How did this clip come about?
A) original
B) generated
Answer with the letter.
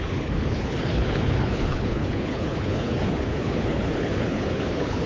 B